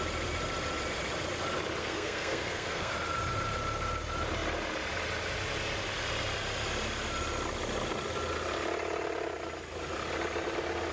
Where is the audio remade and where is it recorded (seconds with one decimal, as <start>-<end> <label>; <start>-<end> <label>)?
0.0-1.8 recorded; 1.8-2.9 remade; 2.9-10.9 recorded